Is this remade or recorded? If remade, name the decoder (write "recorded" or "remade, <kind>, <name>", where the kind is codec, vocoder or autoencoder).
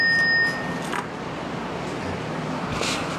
recorded